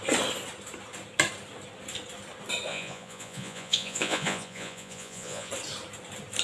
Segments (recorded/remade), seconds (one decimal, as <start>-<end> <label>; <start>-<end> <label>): 0.0-2.7 recorded; 2.7-5.5 remade; 5.5-6.4 recorded